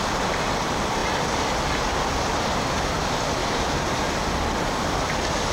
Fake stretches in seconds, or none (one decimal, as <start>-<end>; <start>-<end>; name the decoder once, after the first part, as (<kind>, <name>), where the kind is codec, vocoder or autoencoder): 0.0-1.0 (vocoder, BigVGAN v2); 1.8-3.4; 4.2-5.5